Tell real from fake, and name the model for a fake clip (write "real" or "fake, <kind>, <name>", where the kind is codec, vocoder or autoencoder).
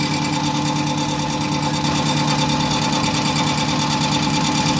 real